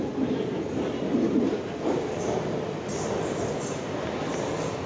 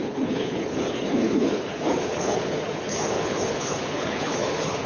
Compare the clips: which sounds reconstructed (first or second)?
second